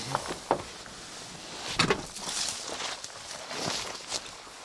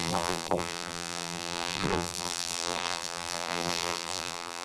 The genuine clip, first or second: first